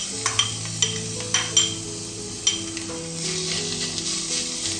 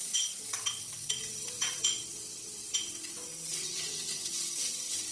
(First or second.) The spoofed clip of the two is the second